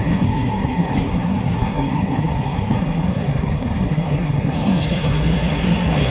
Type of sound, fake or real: fake